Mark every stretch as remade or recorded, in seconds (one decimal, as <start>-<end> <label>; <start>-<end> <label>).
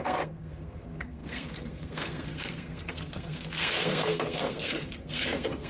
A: 0.0-5.7 remade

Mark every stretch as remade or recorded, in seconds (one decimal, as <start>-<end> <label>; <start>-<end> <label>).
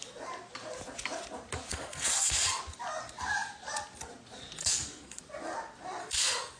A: 0.0-1.7 recorded; 1.7-2.6 remade; 2.6-4.6 recorded; 4.6-5.2 remade; 5.2-6.0 recorded; 6.0-6.6 remade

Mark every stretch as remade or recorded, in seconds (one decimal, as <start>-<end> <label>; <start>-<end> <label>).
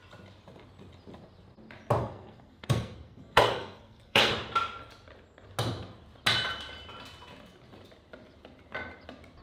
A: 0.0-2.0 recorded; 2.0-4.3 remade; 4.3-9.4 recorded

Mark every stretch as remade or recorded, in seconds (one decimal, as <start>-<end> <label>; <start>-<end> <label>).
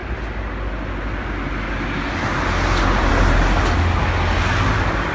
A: 0.0-5.1 recorded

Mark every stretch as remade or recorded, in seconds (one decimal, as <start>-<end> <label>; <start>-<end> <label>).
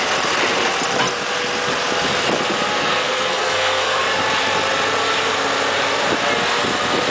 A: 0.0-2.7 recorded; 2.7-4.0 remade; 4.0-7.1 recorded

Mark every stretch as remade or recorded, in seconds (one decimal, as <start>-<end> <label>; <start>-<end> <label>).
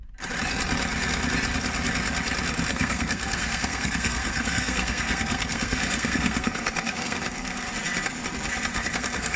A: 0.0-2.7 recorded; 2.7-7.7 remade; 7.7-8.7 recorded; 8.7-9.4 remade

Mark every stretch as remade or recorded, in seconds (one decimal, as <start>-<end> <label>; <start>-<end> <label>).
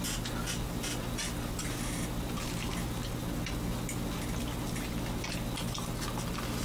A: 0.0-6.6 recorded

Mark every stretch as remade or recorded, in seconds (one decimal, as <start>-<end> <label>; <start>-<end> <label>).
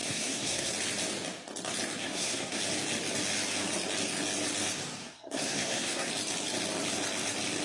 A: 0.0-0.7 remade; 0.7-2.0 recorded; 2.0-2.6 remade; 2.6-5.0 recorded; 5.0-6.1 remade; 6.1-7.6 recorded